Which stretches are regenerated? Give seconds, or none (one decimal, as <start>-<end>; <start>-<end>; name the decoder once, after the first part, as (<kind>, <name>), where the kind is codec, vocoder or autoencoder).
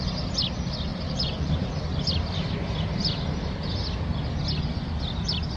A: 0.9-1.7 (vocoder, Vocos)